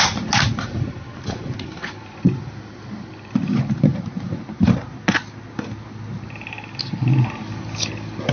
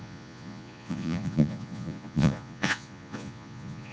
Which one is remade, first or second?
second